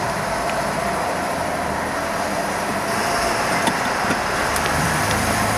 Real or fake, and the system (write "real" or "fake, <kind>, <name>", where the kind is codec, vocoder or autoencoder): fake, vocoder, BigVGAN v2